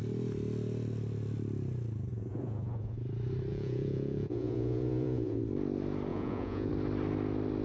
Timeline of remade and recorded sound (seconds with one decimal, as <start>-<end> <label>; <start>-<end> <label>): 0.0-2.1 recorded; 2.1-3.0 remade; 3.0-3.5 recorded; 3.5-5.4 remade; 5.4-6.1 recorded; 6.1-6.7 remade; 6.7-7.6 recorded

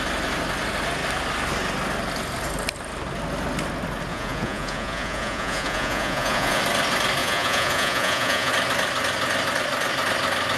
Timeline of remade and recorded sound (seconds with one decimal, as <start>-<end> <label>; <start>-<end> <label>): 0.0-4.1 recorded; 4.1-6.6 remade; 6.6-7.2 recorded; 7.2-8.5 remade; 8.5-10.6 recorded

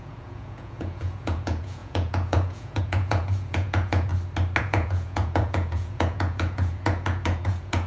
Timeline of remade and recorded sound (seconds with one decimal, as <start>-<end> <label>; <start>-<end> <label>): 0.0-4.1 remade; 4.1-4.6 recorded; 4.6-7.9 remade

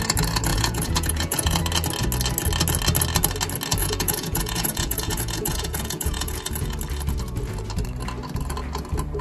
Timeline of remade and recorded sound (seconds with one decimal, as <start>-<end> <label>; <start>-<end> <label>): 0.0-0.5 recorded; 0.5-1.6 remade; 1.6-3.8 recorded; 3.8-6.4 remade; 6.4-9.2 recorded